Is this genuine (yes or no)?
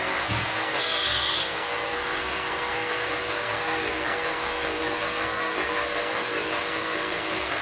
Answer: no